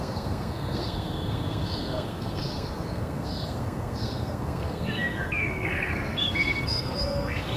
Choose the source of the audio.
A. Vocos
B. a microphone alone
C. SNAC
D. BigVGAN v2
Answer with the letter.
C